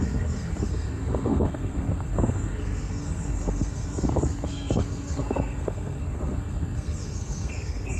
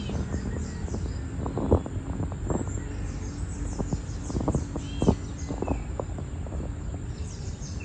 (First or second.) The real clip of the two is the second